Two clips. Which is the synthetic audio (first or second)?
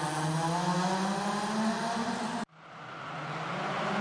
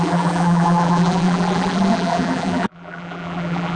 second